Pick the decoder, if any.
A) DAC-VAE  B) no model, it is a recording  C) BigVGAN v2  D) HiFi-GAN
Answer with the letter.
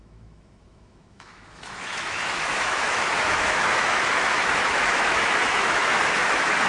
A